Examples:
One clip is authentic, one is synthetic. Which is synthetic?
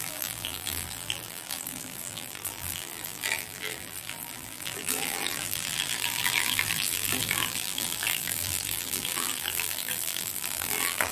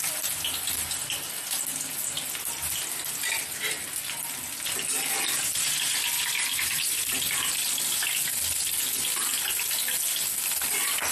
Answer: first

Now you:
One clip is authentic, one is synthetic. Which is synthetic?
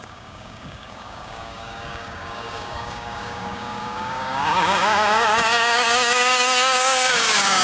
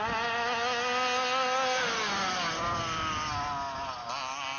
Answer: first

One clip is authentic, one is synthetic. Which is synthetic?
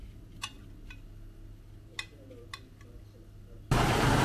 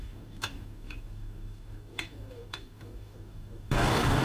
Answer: second